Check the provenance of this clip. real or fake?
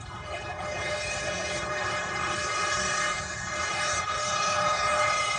fake